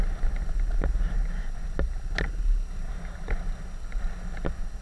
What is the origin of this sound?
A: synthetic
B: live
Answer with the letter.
B